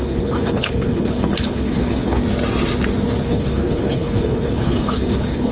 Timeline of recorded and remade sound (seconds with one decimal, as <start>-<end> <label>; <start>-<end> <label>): 0.0-2.2 remade; 2.2-3.2 recorded; 3.2-5.5 remade

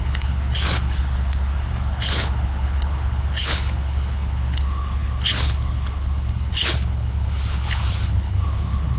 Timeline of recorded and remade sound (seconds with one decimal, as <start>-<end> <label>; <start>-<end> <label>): 0.0-9.0 remade

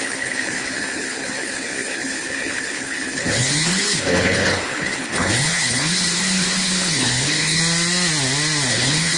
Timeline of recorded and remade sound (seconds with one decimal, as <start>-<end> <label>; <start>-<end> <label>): 0.0-7.6 remade; 7.6-8.7 recorded; 8.7-9.2 remade

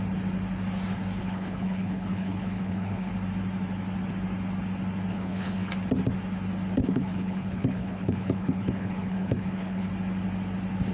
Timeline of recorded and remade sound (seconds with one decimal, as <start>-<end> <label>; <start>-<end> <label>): 0.0-1.2 recorded; 1.2-3.1 remade; 3.1-5.1 recorded; 5.1-5.7 remade; 5.7-6.8 recorded; 6.8-9.9 remade; 9.9-10.9 recorded

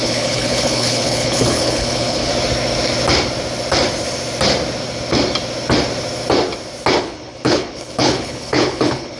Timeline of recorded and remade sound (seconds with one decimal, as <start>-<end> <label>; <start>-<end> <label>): 0.0-2.3 remade; 2.3-7.0 recorded; 7.0-9.2 remade

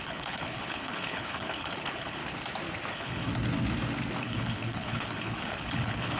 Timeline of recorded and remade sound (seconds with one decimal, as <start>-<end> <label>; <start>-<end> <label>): 0.0-2.2 remade; 2.2-2.9 recorded; 2.9-3.3 remade; 3.3-4.2 recorded; 4.2-6.2 remade

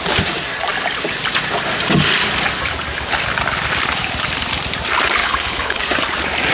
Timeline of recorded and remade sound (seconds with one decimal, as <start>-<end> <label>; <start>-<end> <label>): 0.0-5.2 recorded; 5.2-5.8 remade; 5.8-6.5 recorded

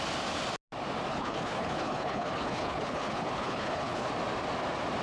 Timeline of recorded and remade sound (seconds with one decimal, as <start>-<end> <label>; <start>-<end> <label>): 0.0-1.1 recorded; 1.1-4.1 remade; 4.1-5.0 recorded